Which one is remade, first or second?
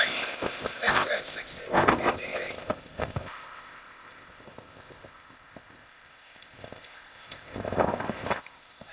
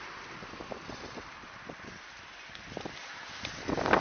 first